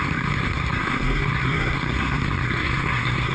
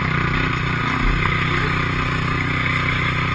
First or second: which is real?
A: second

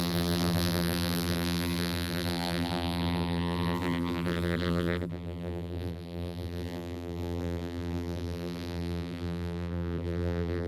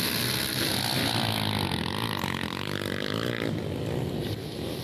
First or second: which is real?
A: second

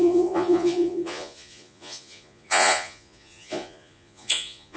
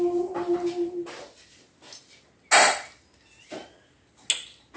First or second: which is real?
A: second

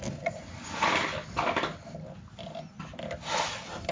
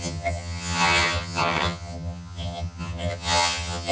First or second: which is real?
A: first